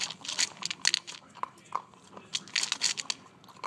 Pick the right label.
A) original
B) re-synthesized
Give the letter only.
A